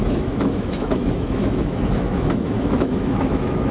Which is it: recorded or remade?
remade